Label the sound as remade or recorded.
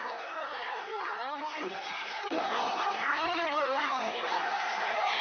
remade